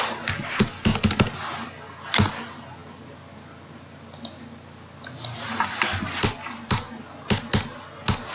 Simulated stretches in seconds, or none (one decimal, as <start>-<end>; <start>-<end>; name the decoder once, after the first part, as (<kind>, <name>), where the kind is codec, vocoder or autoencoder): none